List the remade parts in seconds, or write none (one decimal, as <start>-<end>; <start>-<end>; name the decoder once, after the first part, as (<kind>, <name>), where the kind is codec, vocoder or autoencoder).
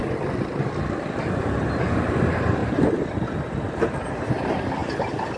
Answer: none